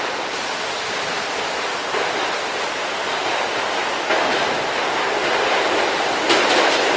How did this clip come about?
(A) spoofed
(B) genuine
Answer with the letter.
B